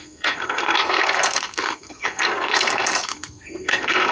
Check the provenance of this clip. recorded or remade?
remade